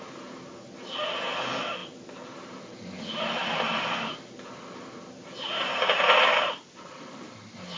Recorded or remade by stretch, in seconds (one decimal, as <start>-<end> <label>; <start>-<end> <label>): 0.0-7.8 recorded